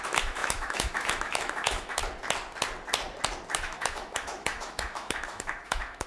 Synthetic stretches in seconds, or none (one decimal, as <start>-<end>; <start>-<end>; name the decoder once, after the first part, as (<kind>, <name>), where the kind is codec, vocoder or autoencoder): 0.0-2.0 (autoencoder, DAC-VAE); 3.5-6.1